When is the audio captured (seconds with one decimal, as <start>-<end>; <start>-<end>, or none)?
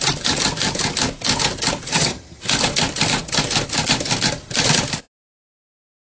0.0-1.9; 2.4-6.1